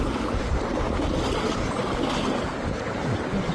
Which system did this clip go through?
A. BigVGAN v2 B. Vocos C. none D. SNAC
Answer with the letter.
C